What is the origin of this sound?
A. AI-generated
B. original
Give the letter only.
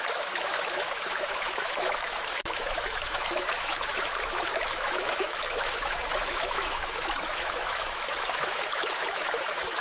A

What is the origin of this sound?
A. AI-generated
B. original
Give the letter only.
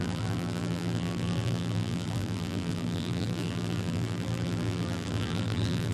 A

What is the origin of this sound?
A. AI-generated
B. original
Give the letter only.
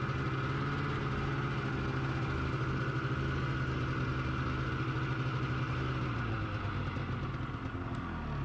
B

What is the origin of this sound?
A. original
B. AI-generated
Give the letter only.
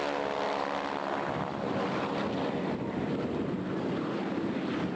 A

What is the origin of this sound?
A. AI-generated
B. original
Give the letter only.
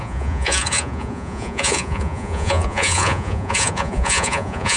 A